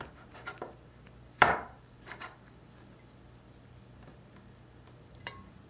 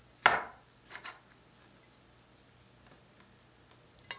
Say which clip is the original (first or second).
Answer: second